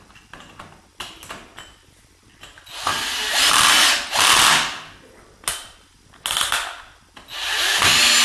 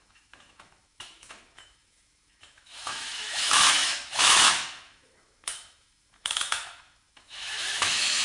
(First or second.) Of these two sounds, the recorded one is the first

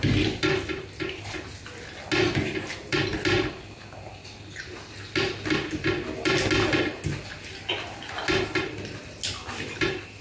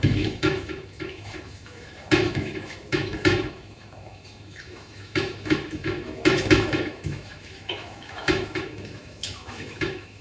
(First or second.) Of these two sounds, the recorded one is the first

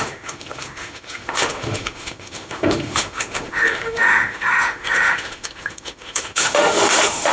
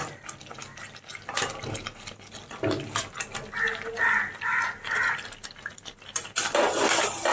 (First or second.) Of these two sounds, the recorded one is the second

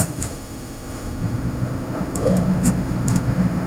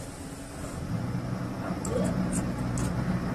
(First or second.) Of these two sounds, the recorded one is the second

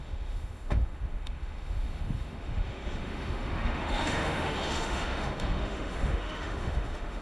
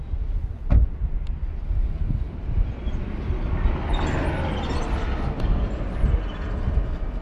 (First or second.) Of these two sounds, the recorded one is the second